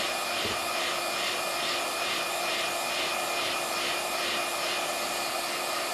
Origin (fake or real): fake